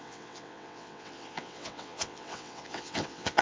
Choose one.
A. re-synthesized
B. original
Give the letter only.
A